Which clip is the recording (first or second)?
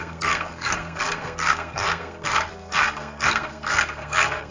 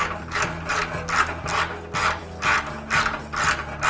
second